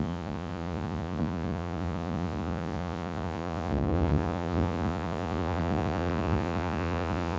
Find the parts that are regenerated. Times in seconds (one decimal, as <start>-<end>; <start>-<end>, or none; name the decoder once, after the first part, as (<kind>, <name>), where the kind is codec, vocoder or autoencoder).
0.0-7.4 (vocoder, Vocos)